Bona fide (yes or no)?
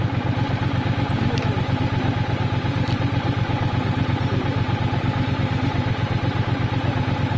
yes